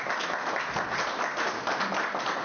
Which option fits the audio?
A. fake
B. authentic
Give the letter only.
B